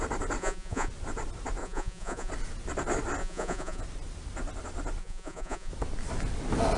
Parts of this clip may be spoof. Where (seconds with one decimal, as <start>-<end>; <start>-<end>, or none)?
0.4-0.9; 1.6-2.3; 3.2-3.8; 5.0-5.7